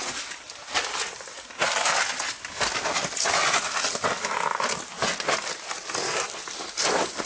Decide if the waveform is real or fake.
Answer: real